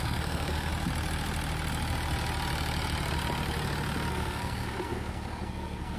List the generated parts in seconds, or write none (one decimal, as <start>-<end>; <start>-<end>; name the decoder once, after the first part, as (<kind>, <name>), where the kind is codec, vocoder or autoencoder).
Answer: 0.0-0.7 (codec, SNAC); 4.1-6.0